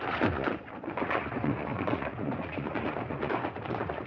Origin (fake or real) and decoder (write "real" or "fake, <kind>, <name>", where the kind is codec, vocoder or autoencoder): fake, vocoder, Vocos